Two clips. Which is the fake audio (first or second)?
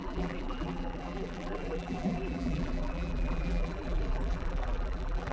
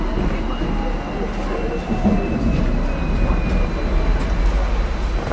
first